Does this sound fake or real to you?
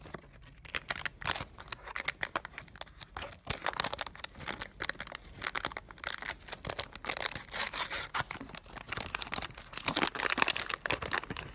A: real